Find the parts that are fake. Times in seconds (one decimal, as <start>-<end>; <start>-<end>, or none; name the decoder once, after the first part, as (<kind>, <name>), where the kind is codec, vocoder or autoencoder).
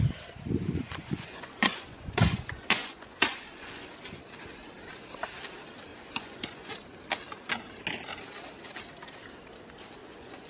0.6-3.9 (vocoder, Vocos); 5.9-6.7; 10.0-10.5